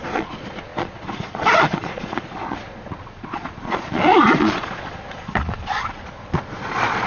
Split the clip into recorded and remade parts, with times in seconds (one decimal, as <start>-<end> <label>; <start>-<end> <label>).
0.0-7.1 remade